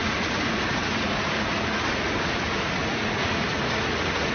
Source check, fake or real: fake